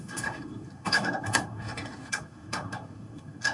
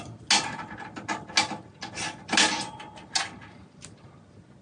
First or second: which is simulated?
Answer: first